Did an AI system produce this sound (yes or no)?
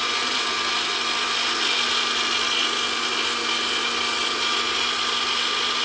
no